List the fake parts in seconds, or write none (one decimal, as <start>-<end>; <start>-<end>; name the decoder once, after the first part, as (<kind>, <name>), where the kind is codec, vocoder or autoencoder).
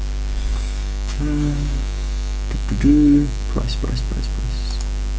0.5-3.6 (codec, DAC)